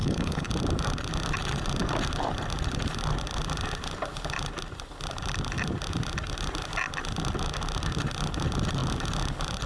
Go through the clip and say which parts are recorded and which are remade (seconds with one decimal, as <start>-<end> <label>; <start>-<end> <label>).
0.0-0.5 remade; 0.5-9.7 recorded